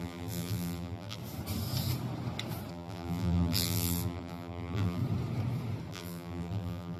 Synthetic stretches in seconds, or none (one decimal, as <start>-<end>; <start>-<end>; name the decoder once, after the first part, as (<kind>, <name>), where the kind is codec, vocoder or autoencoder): 0.0-1.2 (vocoder, BigVGAN v2); 2.7-5.0; 5.9-7.0